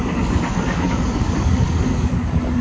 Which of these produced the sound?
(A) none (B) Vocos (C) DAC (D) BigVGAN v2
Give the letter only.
C